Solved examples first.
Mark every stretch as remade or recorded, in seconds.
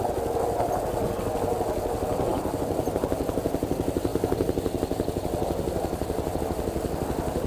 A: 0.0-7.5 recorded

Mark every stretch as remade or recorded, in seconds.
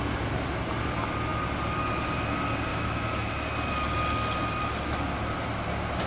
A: 0.0-2.7 recorded; 2.7-3.3 remade; 3.3-6.1 recorded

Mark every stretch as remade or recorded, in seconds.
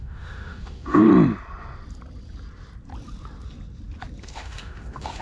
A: 0.0-1.1 remade; 1.1-4.2 recorded; 4.2-5.2 remade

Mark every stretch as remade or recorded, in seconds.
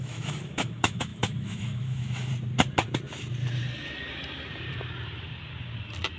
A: 0.0-2.3 remade; 2.3-6.2 recorded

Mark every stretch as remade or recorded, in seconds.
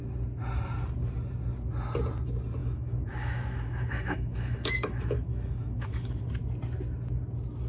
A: 0.0-2.6 recorded; 2.6-6.3 remade; 6.3-7.7 recorded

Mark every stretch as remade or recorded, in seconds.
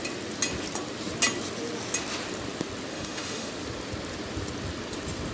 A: 0.0-2.9 recorded; 2.9-3.5 remade; 3.5-5.3 recorded